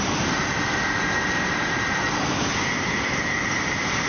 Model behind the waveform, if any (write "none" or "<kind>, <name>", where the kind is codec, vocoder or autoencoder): none